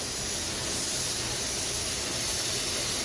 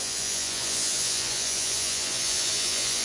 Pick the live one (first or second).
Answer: first